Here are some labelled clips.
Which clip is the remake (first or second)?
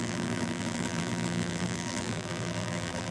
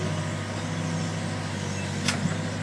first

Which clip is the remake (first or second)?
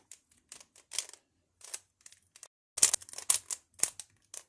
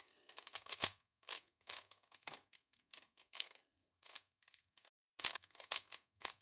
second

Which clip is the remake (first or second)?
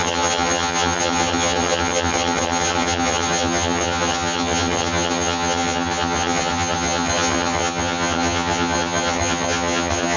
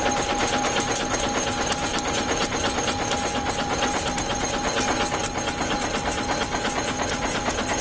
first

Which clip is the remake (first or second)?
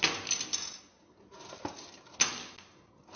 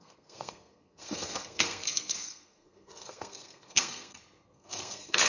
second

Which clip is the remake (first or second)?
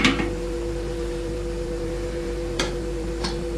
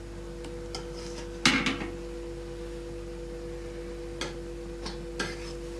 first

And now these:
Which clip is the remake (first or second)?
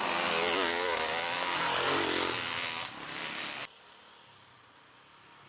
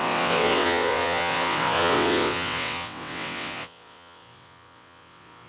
second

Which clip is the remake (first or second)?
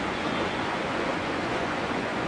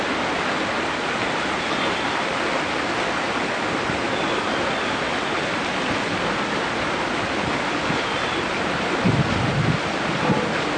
first